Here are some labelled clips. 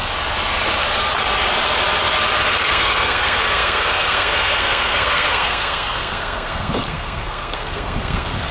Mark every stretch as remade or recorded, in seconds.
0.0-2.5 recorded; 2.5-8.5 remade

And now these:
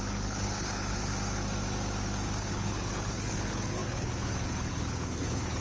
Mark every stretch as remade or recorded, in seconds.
0.0-1.1 remade; 1.1-2.4 recorded; 2.4-5.6 remade

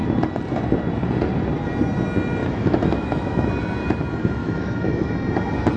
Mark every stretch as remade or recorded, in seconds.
0.0-2.4 recorded; 2.4-3.5 remade; 3.5-4.4 recorded; 4.4-5.1 remade; 5.1-5.8 recorded

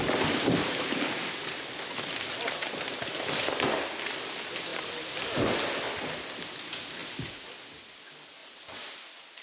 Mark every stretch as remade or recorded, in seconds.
0.0-8.4 recorded; 8.4-9.4 remade

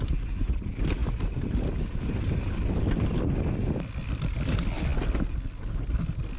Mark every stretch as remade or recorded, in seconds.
0.0-6.4 recorded

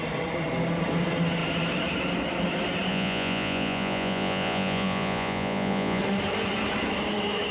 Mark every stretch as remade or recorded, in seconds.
0.0-2.9 recorded; 2.9-6.0 remade; 6.0-7.5 recorded